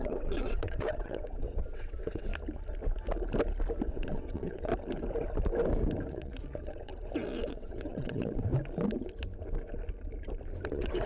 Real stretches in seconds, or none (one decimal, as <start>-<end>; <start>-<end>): 2.3-3.9; 4.7-6.1; 6.9-7.4; 8.5-10.7